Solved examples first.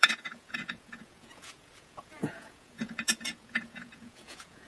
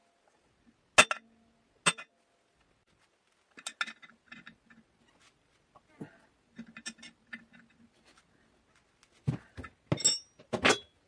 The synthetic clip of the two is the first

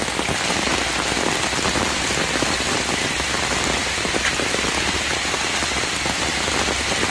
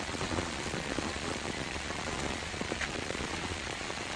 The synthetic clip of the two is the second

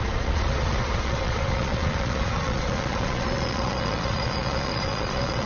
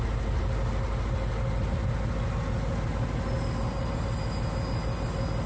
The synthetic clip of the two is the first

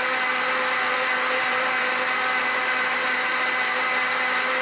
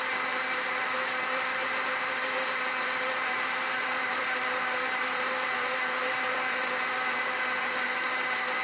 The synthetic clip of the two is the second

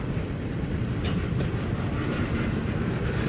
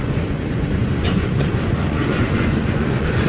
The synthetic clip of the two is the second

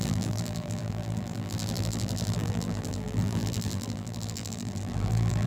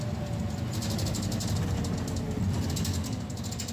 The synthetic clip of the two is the first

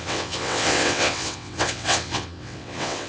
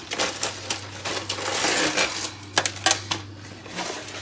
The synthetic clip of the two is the first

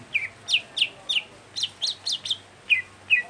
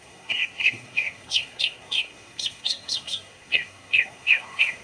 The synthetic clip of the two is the second